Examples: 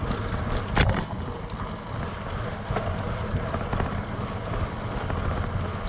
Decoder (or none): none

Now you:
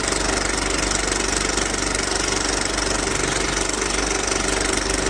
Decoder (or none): none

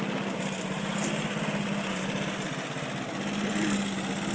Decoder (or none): none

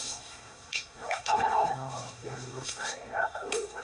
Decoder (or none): codec, SNAC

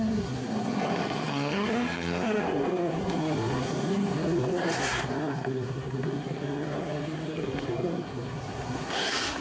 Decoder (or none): codec, SNAC